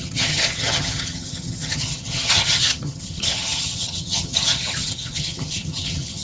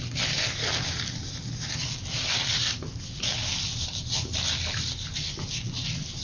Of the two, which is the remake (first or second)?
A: first